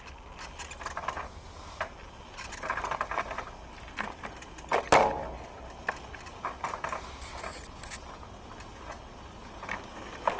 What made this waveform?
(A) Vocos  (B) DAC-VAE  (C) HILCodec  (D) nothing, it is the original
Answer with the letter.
D